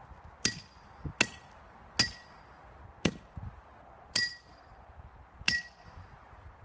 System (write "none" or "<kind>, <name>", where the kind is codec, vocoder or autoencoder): none